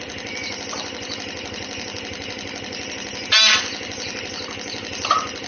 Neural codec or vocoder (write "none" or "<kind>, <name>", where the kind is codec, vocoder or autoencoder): vocoder, BigVGAN v2